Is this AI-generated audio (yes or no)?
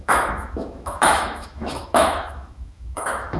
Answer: yes